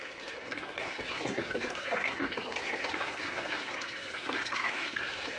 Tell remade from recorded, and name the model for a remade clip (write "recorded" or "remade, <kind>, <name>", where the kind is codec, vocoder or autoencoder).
remade, codec, SNAC